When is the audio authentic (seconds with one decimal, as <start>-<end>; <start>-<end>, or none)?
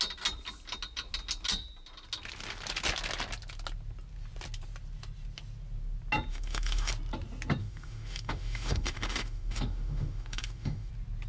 0.0-6.3; 6.9-7.6; 10.9-11.3